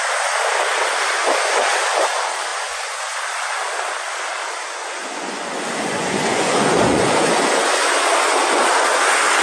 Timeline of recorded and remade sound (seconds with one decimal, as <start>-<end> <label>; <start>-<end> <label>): 0.0-1.2 recorded; 1.2-1.8 remade; 1.8-2.5 recorded; 2.5-3.2 remade; 3.2-4.8 recorded; 4.8-9.4 remade